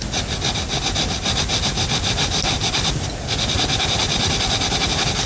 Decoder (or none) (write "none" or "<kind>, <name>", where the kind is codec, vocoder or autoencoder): none